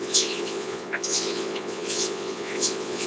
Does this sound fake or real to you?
fake